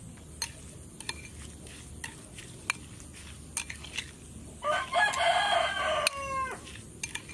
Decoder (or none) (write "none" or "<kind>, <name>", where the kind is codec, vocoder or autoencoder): none